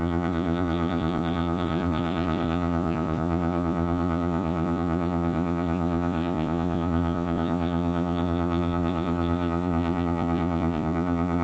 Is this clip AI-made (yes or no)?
yes